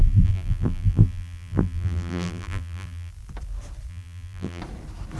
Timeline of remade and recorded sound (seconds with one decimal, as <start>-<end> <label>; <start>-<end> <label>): 0.0-3.1 remade; 3.1-3.9 recorded; 3.9-4.6 remade; 4.6-5.2 recorded